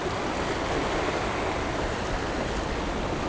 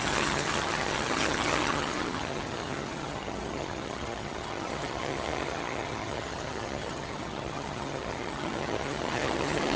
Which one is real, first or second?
first